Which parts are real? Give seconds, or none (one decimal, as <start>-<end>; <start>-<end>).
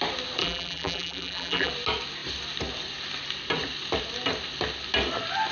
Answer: 0.0-0.4; 1.7-5.5